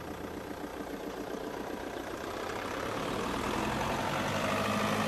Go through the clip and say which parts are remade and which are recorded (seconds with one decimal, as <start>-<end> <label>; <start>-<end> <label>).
0.0-0.7 recorded; 0.7-3.2 remade; 3.2-5.1 recorded